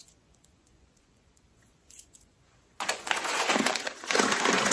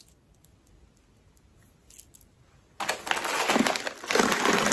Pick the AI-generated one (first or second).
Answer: first